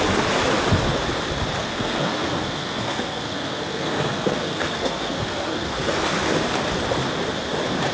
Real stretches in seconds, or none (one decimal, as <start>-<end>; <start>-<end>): 0.0-1.6; 6.1-7.9